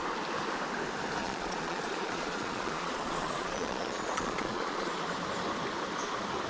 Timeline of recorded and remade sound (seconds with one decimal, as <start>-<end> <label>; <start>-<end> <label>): 0.0-1.2 recorded; 1.2-5.0 remade; 5.0-6.5 recorded